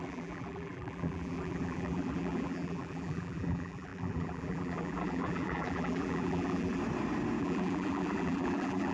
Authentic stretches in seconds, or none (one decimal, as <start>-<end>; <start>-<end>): 6.8-7.4